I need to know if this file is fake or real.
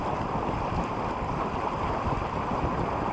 real